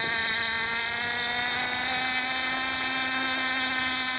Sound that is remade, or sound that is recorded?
recorded